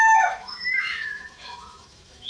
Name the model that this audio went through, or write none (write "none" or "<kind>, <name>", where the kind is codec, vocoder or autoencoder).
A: autoencoder, DAC-VAE